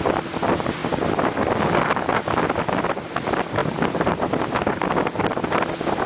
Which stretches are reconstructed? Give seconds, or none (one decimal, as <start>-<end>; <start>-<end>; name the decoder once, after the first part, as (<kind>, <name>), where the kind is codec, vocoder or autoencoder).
3.6-4.9 (vocoder, BigVGAN v2)